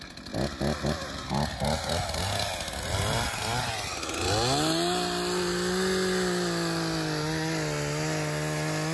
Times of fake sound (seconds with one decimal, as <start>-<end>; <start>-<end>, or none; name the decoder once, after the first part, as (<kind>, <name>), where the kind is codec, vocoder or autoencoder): none